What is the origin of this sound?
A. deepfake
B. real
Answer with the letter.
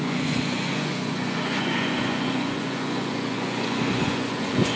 A